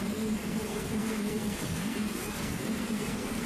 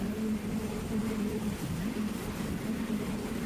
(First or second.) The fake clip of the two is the first